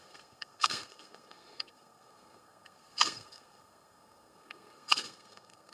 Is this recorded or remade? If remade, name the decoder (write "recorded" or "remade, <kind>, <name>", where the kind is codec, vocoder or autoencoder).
remade, codec, SNAC